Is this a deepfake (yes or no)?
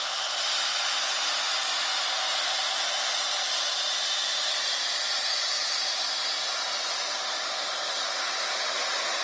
no